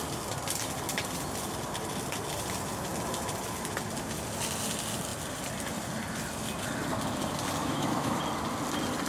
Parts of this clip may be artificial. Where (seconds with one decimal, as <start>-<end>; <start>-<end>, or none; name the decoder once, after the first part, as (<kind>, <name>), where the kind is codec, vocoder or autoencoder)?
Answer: 7.6-8.2 (autoencoder, DAC-VAE)